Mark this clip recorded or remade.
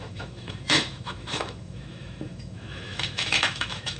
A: remade